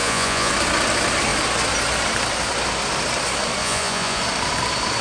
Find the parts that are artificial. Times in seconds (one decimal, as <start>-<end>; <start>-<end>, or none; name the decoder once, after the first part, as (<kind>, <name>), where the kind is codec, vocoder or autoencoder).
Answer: 0.0-0.5 (vocoder, Vocos); 3.6-4.2